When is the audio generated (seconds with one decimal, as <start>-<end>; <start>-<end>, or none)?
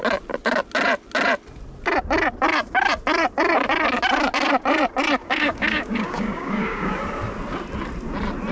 5.2-7.0